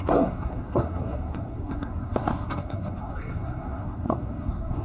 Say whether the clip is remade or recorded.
remade